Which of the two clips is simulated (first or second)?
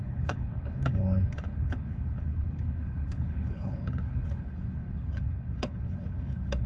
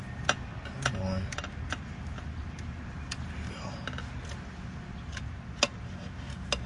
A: first